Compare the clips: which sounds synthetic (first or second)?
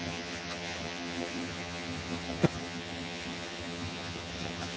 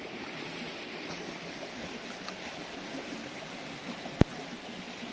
first